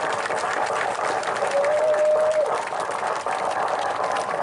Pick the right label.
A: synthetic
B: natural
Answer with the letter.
B